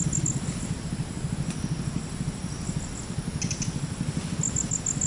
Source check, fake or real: real